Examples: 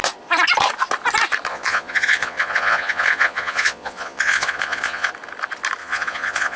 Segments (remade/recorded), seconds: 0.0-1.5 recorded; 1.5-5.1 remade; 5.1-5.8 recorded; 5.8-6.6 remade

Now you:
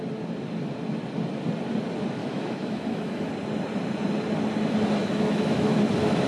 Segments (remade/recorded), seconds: 0.0-2.2 recorded; 2.2-3.3 remade; 3.3-5.0 recorded; 5.0-5.8 remade; 5.8-6.3 recorded